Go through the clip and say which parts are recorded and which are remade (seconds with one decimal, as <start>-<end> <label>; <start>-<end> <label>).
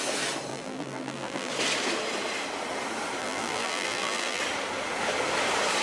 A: 0.0-0.5 recorded; 0.5-1.5 remade; 1.5-3.2 recorded; 3.2-4.4 remade; 4.4-5.8 recorded